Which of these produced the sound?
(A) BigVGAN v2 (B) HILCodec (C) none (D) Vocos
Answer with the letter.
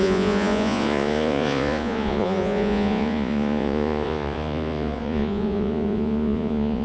D